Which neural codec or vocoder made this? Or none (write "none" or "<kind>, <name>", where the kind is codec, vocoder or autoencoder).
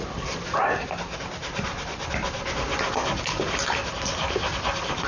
none